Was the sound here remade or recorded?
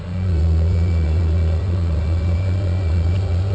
remade